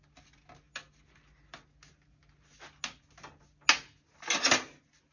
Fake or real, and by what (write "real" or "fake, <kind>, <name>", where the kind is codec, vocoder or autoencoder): real